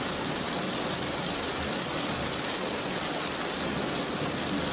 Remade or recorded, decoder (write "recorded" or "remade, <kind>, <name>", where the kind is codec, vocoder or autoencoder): recorded